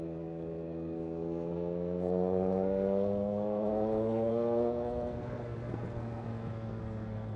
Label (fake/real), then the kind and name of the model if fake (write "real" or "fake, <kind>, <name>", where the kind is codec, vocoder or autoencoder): fake, codec, SNAC